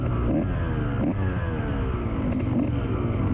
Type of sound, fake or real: real